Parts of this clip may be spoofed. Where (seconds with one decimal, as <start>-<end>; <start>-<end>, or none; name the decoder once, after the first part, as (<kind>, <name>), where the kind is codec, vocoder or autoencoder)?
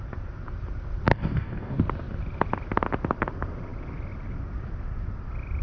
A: 1.1-1.8 (codec, DAC)